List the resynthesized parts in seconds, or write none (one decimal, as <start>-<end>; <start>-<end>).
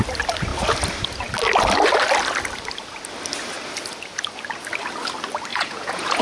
5.5-6.2